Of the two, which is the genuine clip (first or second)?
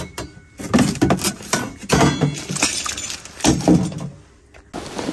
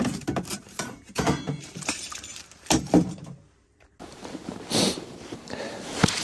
first